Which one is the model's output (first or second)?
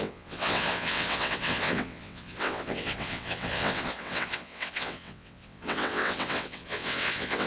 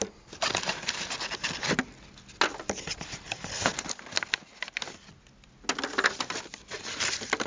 first